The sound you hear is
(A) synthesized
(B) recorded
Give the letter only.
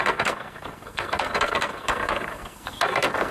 A